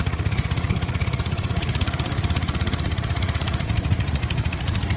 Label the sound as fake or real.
fake